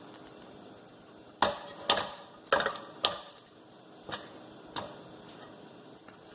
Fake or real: real